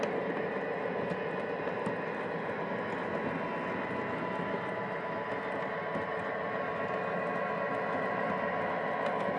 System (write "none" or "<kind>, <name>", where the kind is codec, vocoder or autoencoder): none